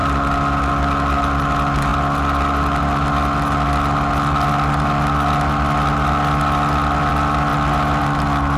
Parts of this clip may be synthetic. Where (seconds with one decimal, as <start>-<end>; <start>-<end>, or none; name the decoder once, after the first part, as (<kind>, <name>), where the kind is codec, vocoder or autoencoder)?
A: none